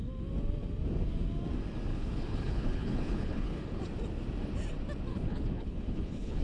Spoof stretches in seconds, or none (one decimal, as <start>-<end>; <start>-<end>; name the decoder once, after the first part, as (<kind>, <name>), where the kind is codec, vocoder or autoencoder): 1.9-3.8 (codec, HILCodec); 5.1-6.4